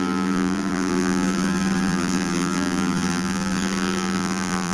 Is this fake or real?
fake